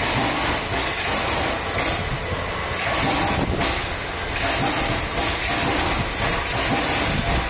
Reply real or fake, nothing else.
real